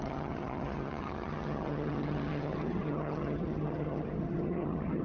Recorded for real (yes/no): no